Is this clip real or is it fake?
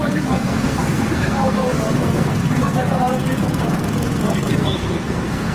fake